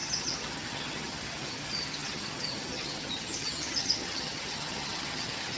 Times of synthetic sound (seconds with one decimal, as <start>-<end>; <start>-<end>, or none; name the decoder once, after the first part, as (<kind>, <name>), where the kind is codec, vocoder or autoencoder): 0.0-5.6 (vocoder, HiFi-GAN)

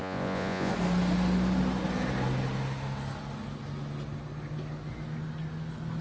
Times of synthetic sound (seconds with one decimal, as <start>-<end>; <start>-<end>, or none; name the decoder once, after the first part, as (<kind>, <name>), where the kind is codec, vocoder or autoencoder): 0.0-0.7 (vocoder, Vocos)